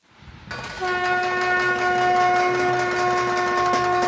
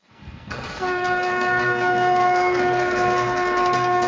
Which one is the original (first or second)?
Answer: first